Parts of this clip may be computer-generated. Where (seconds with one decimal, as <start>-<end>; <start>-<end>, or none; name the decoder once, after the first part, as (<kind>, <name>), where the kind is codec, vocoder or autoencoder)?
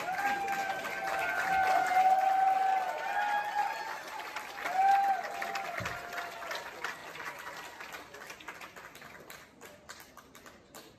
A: none